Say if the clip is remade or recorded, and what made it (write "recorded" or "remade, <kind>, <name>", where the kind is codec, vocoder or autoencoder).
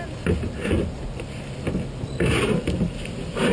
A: recorded